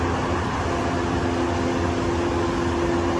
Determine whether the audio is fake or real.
real